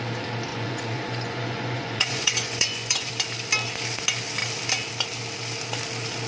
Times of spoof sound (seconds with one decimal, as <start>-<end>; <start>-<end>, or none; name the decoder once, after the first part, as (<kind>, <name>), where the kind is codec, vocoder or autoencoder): 0.5-3.1 (vocoder, Vocos)